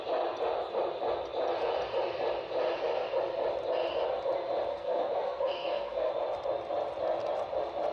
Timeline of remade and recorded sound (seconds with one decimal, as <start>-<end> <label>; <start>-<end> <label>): 0.0-4.7 recorded; 4.7-6.1 remade; 6.1-7.9 recorded